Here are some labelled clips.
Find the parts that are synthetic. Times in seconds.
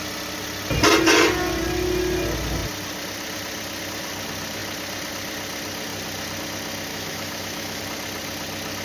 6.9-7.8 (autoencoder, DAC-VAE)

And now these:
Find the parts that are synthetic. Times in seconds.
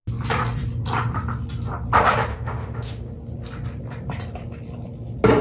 2.3-3.1 (autoencoder, DAC-VAE)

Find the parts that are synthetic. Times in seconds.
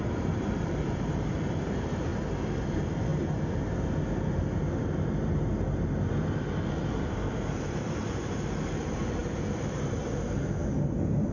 0.0-2.1 (vocoder, BigVGAN v2); 2.7-3.1; 6.7-11.3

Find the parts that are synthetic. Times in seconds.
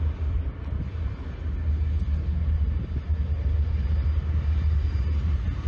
none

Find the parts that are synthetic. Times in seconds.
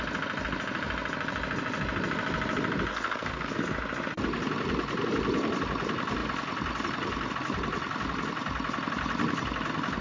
2.9-3.6 (codec, SNAC)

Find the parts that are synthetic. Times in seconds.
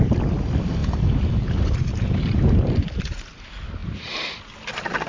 none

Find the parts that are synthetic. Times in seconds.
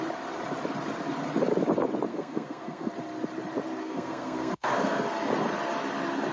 2.1-2.9 (codec, SNAC); 3.8-5.0